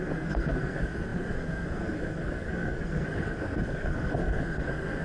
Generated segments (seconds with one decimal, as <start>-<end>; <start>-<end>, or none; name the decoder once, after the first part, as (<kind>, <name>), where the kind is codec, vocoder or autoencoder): 0.0-5.0 (codec, SNAC)